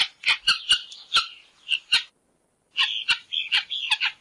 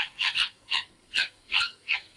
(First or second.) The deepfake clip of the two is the second